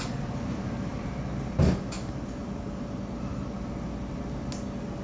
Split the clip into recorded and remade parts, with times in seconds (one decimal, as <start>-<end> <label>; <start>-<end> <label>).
0.0-5.0 recorded